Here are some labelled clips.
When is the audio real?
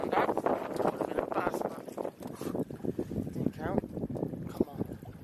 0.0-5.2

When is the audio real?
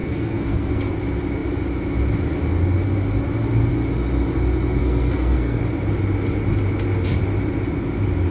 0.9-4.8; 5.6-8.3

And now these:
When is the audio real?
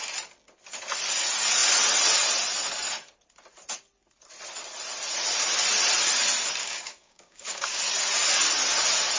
0.0-6.6; 7.8-9.2